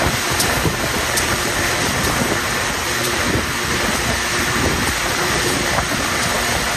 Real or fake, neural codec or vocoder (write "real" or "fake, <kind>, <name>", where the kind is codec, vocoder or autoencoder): fake, vocoder, BigVGAN v2